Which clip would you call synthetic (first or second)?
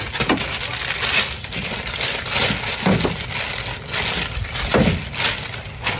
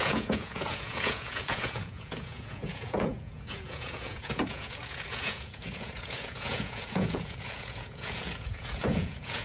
second